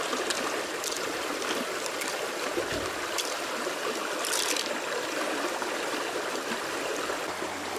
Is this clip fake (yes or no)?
no